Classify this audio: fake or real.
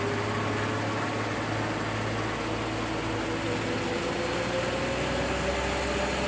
real